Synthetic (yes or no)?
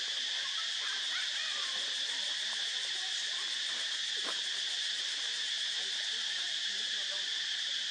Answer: yes